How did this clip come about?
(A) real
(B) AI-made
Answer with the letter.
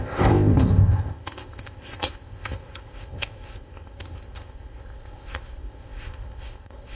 B